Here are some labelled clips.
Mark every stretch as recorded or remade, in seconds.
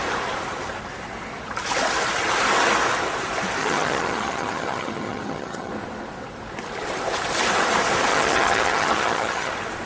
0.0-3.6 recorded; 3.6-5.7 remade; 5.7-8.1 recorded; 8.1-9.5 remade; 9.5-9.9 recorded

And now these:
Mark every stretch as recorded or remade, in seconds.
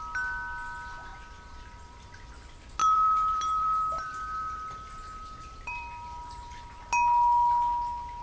0.0-1.1 recorded; 1.1-2.1 remade; 2.1-2.8 recorded; 2.8-6.8 remade; 6.8-8.2 recorded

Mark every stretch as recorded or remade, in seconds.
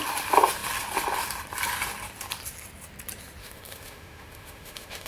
0.0-3.4 recorded; 3.4-5.1 remade